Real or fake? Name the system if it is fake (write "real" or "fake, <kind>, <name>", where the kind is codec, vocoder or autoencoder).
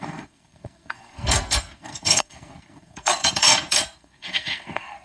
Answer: fake, codec, SNAC